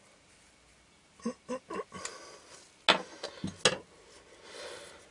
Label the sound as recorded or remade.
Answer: recorded